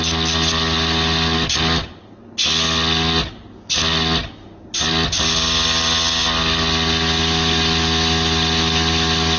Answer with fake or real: real